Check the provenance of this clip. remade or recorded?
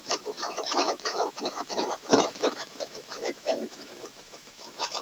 remade